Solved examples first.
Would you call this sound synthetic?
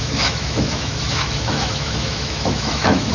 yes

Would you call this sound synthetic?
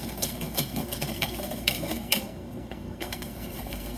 yes